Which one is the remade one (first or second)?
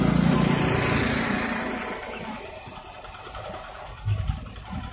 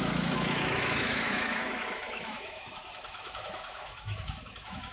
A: second